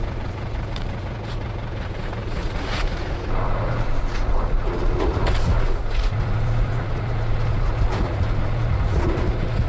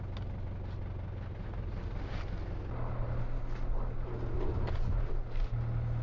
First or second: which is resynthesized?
first